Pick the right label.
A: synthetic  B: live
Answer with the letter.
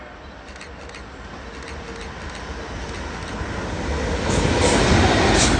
B